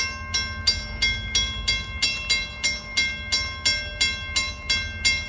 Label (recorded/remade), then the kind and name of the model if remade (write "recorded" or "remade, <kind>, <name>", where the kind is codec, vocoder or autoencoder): recorded